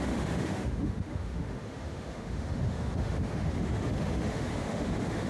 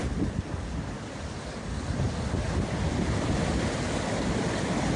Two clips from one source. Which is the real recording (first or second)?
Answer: second